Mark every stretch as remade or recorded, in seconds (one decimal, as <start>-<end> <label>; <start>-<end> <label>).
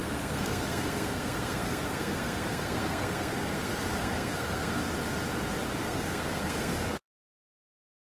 0.0-4.8 remade; 4.8-5.8 recorded; 5.8-8.2 remade